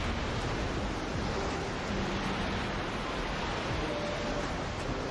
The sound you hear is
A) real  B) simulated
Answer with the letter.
A